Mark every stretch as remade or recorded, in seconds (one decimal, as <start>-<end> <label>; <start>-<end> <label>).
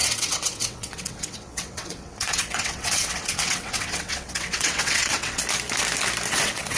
0.0-5.4 remade; 5.4-6.3 recorded; 6.3-6.8 remade